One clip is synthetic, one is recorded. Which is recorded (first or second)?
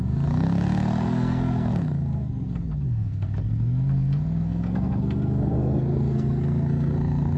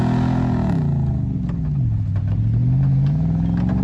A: second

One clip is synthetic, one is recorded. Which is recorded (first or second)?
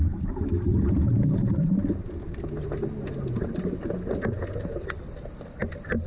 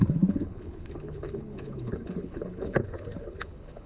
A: first